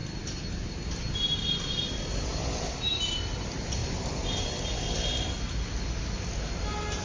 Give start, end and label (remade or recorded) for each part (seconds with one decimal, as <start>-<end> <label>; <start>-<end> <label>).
0.0-7.0 recorded